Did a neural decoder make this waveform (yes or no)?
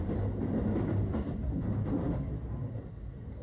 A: no